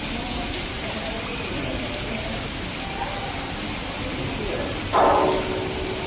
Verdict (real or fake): real